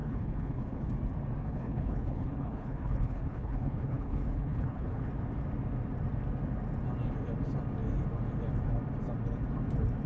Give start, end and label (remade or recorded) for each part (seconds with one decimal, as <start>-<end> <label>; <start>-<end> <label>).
0.0-0.9 remade; 0.9-1.4 recorded; 1.4-5.1 remade; 5.1-10.1 recorded